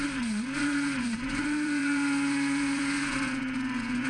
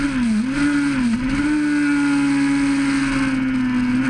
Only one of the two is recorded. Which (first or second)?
second